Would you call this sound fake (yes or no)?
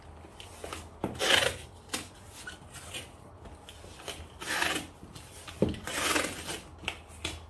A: no